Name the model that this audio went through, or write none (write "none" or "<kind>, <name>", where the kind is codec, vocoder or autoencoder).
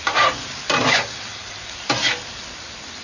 none